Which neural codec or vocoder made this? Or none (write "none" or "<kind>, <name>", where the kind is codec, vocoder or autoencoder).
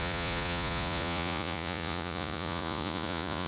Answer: vocoder, Vocos